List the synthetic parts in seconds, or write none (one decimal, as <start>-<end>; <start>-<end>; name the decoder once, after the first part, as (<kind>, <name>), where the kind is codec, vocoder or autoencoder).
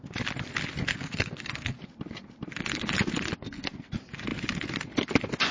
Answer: 0.9-1.8 (codec, SNAC); 3.4-3.9